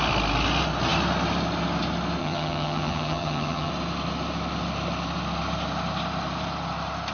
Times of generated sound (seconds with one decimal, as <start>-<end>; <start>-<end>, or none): 2.2-3.7